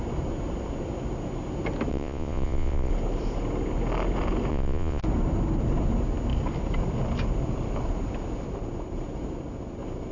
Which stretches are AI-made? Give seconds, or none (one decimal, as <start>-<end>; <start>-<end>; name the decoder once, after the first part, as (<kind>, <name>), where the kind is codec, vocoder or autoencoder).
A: 1.9-2.9 (vocoder, Vocos); 4.5-5.0